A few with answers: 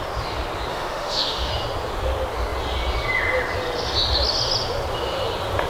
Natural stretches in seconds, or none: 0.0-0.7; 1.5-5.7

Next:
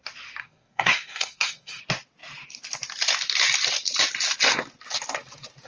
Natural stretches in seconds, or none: 0.0-0.4; 1.8-5.7

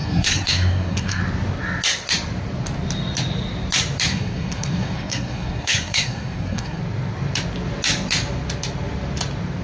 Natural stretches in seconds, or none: 1.2-4.1; 6.8-9.6

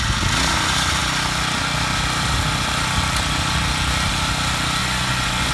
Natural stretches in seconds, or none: 0.0-4.8

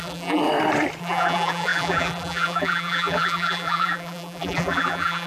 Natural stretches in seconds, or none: 0.4-1.0